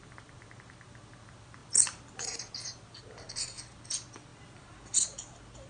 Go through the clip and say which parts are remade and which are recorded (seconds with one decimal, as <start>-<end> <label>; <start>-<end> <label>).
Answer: 0.0-5.7 recorded